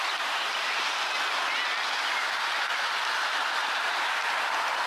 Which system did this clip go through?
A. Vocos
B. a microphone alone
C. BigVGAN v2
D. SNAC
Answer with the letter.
B